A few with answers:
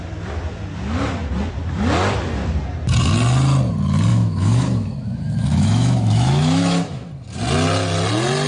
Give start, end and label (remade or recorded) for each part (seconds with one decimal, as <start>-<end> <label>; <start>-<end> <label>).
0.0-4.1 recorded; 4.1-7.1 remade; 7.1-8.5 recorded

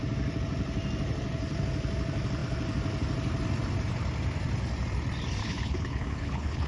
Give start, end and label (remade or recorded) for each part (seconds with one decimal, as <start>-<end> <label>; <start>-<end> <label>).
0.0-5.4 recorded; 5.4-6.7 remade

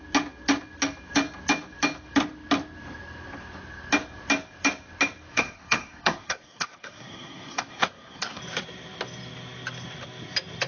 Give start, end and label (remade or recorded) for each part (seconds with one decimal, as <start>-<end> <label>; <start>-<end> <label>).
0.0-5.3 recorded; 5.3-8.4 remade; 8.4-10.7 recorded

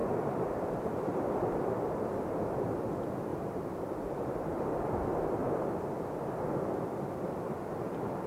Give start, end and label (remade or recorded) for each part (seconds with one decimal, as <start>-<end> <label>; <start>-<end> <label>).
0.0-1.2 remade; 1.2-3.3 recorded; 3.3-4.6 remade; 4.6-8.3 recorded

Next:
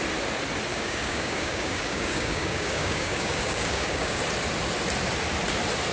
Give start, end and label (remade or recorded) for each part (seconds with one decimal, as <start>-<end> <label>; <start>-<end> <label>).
0.0-0.7 recorded; 0.7-4.2 remade; 4.2-5.9 recorded